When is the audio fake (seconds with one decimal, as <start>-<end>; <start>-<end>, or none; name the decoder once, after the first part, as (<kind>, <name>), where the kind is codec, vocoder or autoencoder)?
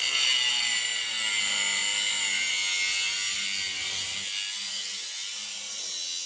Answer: none